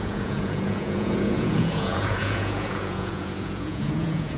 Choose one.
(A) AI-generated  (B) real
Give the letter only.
A